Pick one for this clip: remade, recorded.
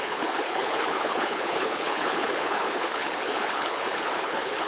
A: remade